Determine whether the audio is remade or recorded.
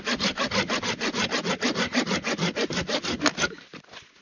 recorded